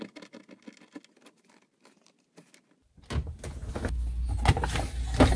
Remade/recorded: recorded